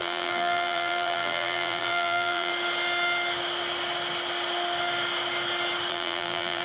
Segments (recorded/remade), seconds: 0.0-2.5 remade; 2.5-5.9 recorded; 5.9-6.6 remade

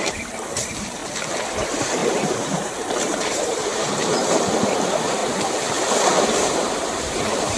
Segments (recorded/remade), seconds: 0.0-1.0 remade; 1.0-1.5 recorded; 1.5-5.2 remade; 5.2-6.2 recorded; 6.2-7.6 remade

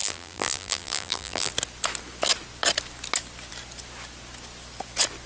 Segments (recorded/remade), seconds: 0.0-1.5 remade; 1.5-5.3 recorded

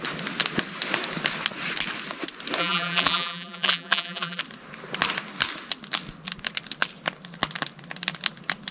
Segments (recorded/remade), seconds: 0.0-2.6 recorded; 2.6-4.4 remade; 4.4-8.7 recorded

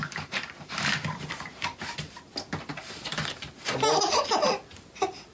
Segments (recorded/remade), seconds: 0.0-1.8 remade; 1.8-5.3 recorded